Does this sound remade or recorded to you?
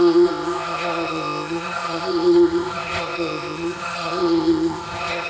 remade